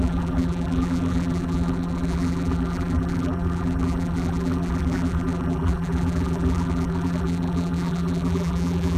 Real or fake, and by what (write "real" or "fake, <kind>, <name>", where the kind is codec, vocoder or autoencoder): fake, vocoder, BigVGAN v2